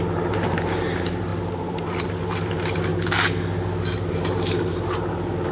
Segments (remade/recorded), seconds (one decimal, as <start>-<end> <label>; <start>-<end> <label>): 0.0-2.9 remade; 2.9-4.1 recorded; 4.1-5.5 remade